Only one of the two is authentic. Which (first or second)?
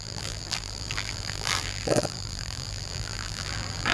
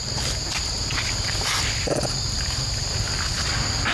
second